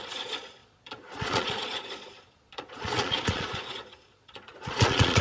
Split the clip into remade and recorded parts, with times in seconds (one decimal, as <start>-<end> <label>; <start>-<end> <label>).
0.0-5.2 remade